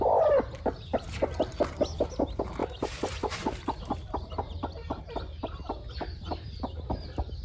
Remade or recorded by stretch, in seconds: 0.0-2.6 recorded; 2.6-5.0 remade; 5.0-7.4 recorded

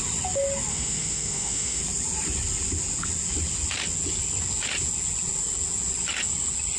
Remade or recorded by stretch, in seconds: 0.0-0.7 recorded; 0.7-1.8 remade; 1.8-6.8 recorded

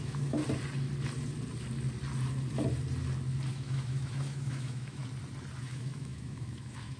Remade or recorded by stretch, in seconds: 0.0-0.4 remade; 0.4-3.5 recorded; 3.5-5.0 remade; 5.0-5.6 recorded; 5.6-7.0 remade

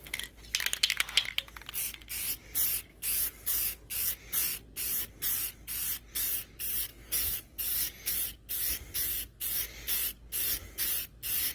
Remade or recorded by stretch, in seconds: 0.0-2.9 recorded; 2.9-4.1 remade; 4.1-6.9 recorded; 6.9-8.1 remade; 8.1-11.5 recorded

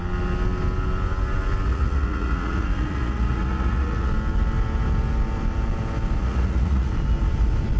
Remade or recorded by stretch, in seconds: 0.0-1.7 recorded; 1.7-4.1 remade; 4.1-6.2 recorded; 6.2-6.9 remade; 6.9-7.8 recorded

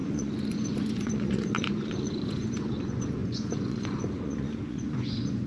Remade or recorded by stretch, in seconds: 0.0-5.5 remade

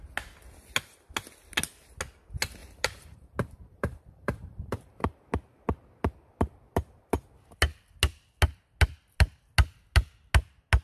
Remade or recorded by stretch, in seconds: 0.0-2.6 recorded; 2.6-5.2 remade; 5.2-10.8 recorded

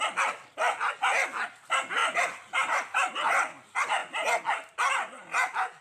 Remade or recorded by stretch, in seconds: 0.0-2.0 recorded; 2.0-2.8 remade; 2.8-5.8 recorded